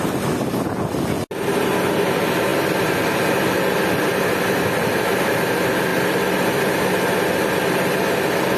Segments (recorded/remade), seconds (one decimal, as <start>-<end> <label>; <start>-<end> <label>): 0.0-8.6 recorded